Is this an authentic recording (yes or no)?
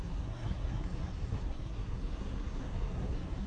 no